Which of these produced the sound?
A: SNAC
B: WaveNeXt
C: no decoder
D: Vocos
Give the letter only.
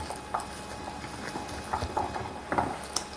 C